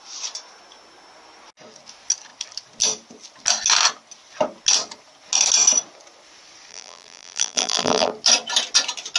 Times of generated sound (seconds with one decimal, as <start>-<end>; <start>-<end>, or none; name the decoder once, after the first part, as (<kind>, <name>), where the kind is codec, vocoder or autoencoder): 6.7-8.1 (vocoder, BigVGAN v2)